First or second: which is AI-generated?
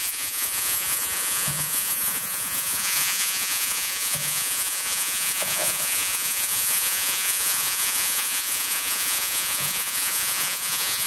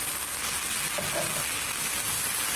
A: first